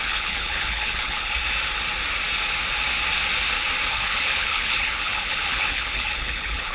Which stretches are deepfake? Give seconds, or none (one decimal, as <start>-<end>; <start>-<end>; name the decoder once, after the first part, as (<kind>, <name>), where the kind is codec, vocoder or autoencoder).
0.0-1.4 (codec, HILCodec); 3.9-6.7